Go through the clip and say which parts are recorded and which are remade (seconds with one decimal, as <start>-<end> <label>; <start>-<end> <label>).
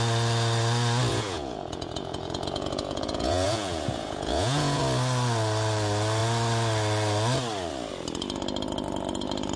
0.0-1.1 recorded; 1.1-4.8 remade; 4.8-9.6 recorded